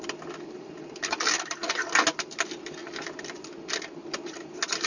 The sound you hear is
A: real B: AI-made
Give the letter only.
A